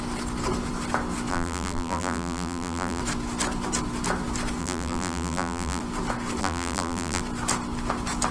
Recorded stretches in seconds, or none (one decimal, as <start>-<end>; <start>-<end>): 0.0-1.3; 3.0-4.6; 5.8-6.4; 7.2-8.3